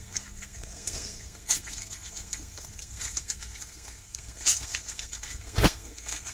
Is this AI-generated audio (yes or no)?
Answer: yes